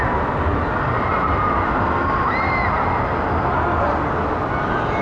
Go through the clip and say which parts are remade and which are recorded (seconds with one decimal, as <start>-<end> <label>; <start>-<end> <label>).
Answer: 0.0-5.0 recorded